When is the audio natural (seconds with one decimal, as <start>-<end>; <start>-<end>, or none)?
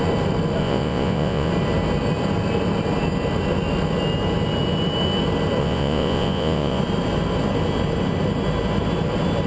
0.0-0.6; 1.5-5.6; 6.8-9.5